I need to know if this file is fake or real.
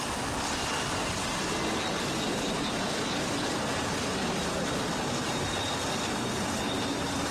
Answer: real